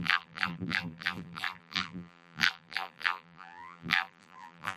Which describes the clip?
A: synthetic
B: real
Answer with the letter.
A